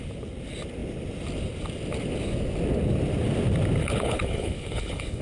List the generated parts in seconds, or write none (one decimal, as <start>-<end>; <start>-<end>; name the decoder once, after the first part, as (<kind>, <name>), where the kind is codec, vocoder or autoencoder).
3.8-5.2 (codec, HILCodec)